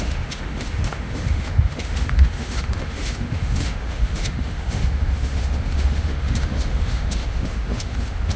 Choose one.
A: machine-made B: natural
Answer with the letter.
A